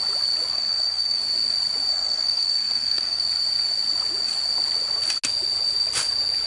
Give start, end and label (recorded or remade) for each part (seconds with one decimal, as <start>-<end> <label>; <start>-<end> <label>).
0.0-0.5 recorded; 0.5-1.2 remade; 1.2-1.9 recorded; 1.9-3.2 remade; 3.2-6.5 recorded